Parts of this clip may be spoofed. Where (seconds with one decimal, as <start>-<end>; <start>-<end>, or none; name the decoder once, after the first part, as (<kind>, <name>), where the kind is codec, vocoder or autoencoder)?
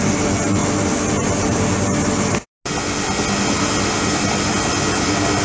none